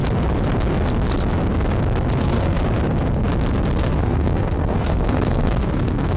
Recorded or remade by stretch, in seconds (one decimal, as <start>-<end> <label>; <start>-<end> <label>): 0.0-2.2 recorded; 2.2-2.6 remade; 2.6-3.8 recorded; 3.8-6.2 remade